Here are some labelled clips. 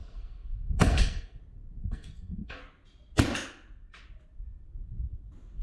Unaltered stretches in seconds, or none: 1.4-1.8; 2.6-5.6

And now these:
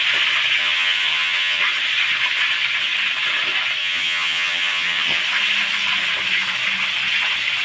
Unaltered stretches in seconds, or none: 0.0-0.6; 1.6-3.8; 5.2-7.6

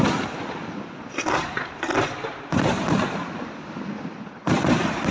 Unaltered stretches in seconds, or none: 1.9-4.3